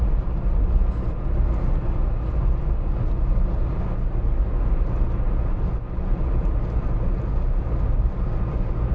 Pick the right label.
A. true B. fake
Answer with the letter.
A